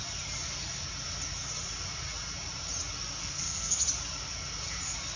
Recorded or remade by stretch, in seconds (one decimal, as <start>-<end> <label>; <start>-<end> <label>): 0.0-3.2 recorded; 3.2-3.8 remade; 3.8-5.2 recorded